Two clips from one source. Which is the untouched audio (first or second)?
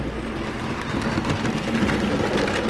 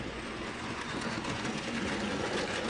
first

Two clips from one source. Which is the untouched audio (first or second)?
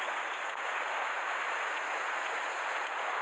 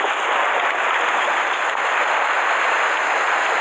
second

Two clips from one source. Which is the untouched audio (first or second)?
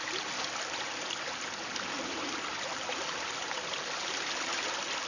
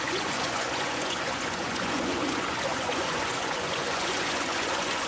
first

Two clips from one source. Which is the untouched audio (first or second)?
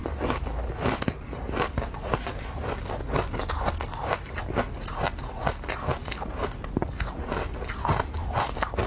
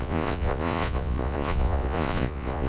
first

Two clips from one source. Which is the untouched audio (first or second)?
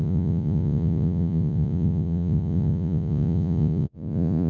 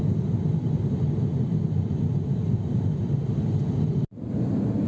second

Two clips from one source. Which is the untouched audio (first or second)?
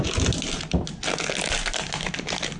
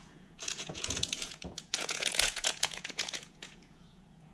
first